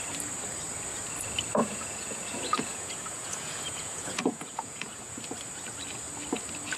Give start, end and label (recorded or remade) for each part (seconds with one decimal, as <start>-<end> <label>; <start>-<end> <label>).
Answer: 0.0-1.6 recorded; 1.6-5.1 remade; 5.1-6.8 recorded